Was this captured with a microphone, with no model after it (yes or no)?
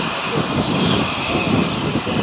yes